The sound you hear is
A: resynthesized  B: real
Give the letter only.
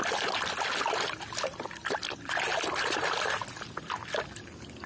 B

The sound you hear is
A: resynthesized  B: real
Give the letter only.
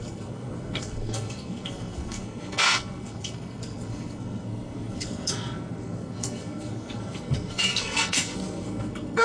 A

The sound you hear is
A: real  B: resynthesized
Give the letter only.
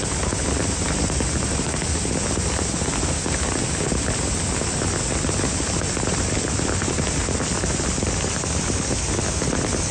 A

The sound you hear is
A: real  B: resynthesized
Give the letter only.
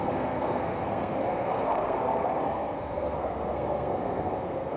B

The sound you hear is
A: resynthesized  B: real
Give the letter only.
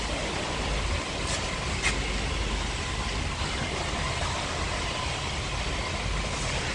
B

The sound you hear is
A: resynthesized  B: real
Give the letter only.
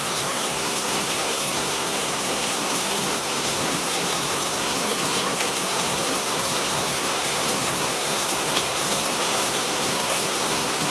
A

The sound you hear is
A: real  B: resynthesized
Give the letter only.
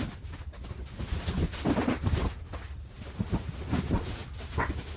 A